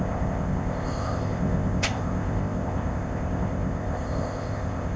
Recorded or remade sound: remade